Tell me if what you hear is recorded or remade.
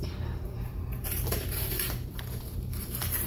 remade